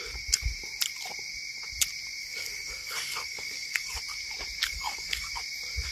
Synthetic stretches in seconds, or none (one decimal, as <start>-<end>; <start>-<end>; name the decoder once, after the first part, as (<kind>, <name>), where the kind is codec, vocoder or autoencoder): 2.2-4.0 (codec, DAC); 4.7-5.3